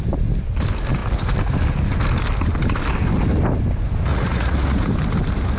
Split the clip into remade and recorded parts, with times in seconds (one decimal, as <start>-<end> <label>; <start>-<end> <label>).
0.0-4.1 recorded; 4.1-4.9 remade; 4.9-5.6 recorded